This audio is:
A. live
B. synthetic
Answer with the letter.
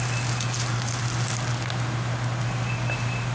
A